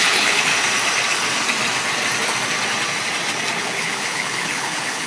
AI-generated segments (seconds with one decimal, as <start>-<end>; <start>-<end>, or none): 0.0-0.5; 3.6-5.1